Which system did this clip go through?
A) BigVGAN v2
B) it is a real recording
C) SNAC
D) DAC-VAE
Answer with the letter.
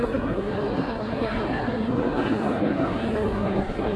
C